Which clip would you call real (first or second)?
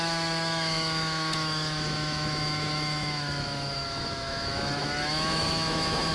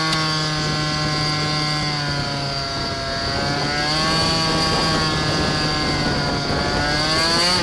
second